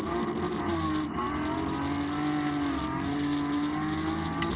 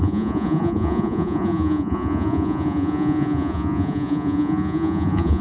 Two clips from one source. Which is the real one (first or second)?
first